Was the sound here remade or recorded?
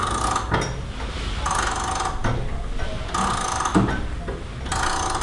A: recorded